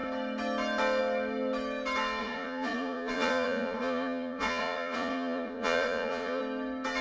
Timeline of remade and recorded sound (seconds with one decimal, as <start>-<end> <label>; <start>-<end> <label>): 0.0-2.2 recorded; 2.2-6.4 remade; 6.4-7.0 recorded